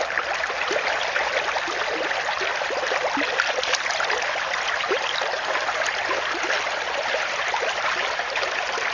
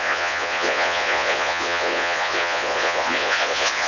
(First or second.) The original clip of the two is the first